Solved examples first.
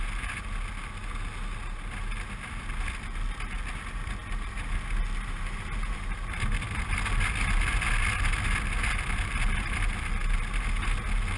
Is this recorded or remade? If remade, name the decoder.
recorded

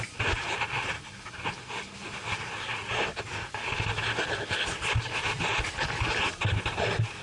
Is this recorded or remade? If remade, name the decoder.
recorded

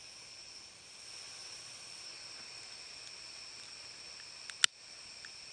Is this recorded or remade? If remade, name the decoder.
recorded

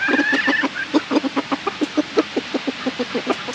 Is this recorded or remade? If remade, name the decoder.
recorded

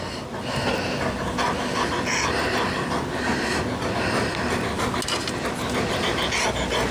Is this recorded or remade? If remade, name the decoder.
recorded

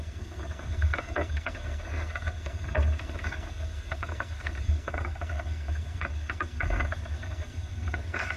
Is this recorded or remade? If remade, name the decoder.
remade, codec, SNAC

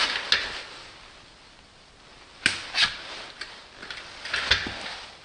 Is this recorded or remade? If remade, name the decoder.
recorded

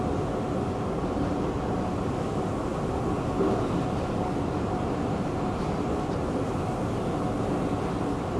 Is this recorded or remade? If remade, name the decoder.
recorded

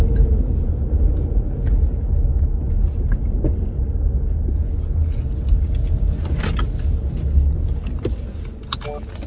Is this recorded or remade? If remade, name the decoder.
recorded